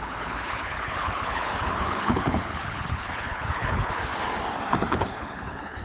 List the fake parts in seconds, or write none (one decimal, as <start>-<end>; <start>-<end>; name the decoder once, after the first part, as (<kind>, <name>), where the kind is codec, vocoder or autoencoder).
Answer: 0.0-4.1 (codec, HILCodec); 4.9-5.8